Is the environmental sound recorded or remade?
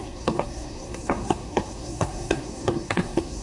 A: remade